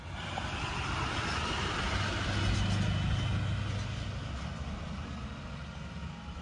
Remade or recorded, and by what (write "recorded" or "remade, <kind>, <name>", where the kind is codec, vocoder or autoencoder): recorded